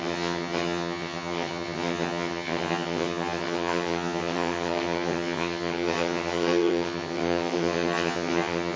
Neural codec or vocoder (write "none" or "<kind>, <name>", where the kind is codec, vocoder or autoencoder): vocoder, HiFi-GAN